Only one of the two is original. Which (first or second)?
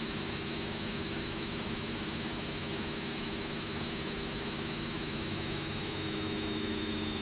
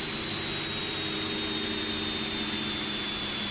second